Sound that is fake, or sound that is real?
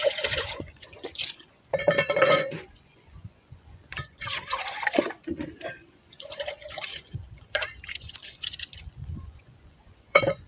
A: fake